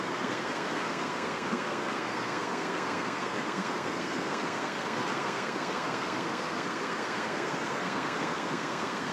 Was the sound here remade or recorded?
remade